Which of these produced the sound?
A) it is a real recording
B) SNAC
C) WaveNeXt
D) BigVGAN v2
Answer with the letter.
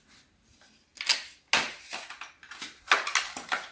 A